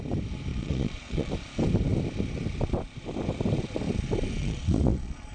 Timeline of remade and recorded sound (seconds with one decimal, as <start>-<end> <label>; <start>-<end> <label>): 0.0-0.5 recorded; 0.5-1.3 remade; 1.3-4.4 recorded; 4.4-5.3 remade